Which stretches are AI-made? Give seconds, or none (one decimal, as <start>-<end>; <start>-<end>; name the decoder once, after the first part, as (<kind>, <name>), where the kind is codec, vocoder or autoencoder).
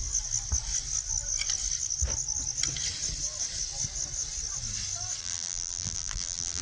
5.2-6.6 (vocoder, BigVGAN v2)